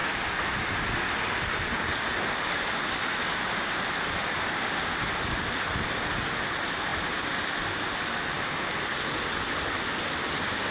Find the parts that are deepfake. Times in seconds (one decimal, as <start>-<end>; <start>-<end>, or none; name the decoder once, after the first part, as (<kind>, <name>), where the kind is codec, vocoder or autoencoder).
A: none